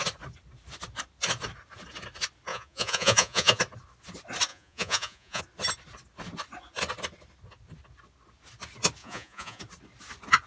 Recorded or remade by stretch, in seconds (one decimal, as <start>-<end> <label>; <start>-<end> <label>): 0.0-2.5 recorded; 2.5-3.6 remade; 3.6-4.5 recorded; 4.5-5.4 remade; 5.4-9.0 recorded; 9.0-9.6 remade; 9.6-10.5 recorded